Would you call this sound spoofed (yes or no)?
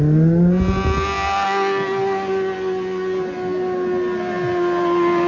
no